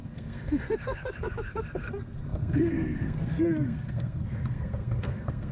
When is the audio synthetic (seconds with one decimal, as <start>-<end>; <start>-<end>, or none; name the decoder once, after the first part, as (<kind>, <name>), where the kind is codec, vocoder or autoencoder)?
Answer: 0.0-5.5 (codec, SNAC)